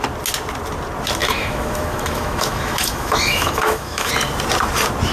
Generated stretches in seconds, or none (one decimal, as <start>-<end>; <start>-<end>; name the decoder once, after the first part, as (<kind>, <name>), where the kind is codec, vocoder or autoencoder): 1.2-4.1 (autoencoder, DAC-VAE)